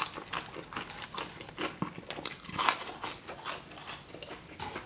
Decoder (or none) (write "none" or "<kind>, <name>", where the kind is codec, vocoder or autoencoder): none